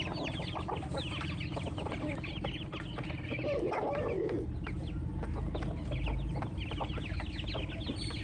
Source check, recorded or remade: recorded